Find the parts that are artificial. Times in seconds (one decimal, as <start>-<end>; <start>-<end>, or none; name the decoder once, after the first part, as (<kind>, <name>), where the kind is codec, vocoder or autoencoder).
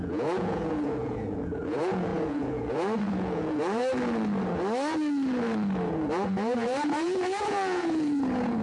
0.0-3.8 (vocoder, Vocos); 5.9-8.6